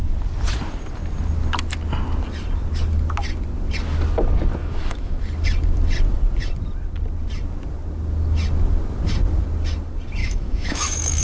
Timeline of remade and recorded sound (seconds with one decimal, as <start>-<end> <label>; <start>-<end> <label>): 0.0-4.6 recorded; 4.6-5.2 remade; 5.2-10.2 recorded; 10.2-11.2 remade